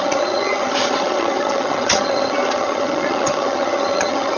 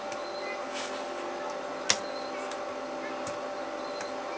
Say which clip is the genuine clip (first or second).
second